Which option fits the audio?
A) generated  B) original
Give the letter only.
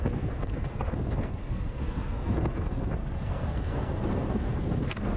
A